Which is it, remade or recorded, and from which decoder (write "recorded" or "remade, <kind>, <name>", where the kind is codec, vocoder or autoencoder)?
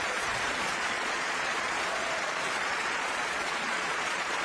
remade, vocoder, Vocos